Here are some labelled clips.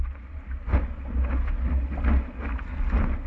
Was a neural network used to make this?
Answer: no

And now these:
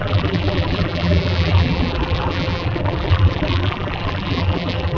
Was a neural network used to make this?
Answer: yes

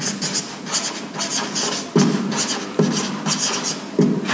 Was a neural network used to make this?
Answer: no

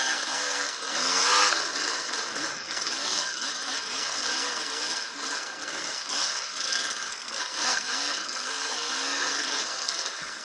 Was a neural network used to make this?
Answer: yes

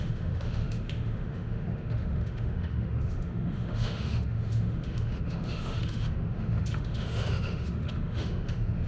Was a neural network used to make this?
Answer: yes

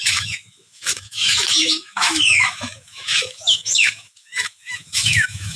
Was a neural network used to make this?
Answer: yes